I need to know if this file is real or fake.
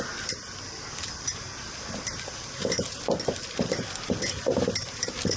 real